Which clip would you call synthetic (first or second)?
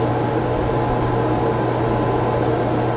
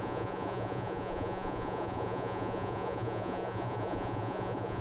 second